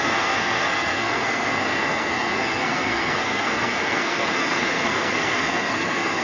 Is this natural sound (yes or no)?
no